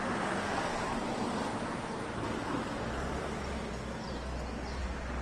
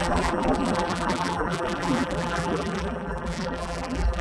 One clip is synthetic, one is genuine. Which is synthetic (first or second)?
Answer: second